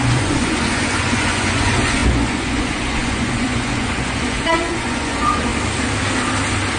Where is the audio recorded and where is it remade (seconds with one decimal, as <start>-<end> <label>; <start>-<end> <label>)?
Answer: 0.0-5.5 remade; 5.5-6.8 recorded